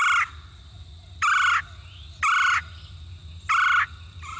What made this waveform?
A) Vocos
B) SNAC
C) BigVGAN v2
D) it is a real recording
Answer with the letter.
D